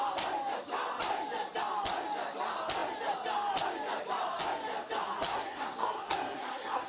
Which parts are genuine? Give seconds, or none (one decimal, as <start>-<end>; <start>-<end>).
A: 0.0-5.3